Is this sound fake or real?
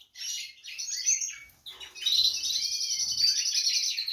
real